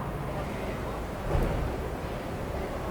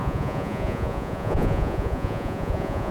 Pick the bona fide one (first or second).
first